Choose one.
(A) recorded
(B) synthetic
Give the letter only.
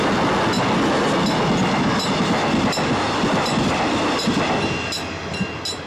A